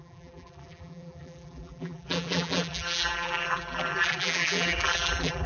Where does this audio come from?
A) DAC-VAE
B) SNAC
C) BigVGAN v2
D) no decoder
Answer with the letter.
C